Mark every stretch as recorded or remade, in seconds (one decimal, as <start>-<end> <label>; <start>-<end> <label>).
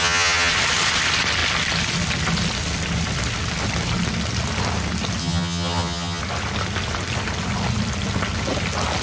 0.0-0.5 remade; 0.5-5.2 recorded; 5.2-6.2 remade; 6.2-9.0 recorded